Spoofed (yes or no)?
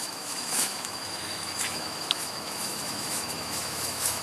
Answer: yes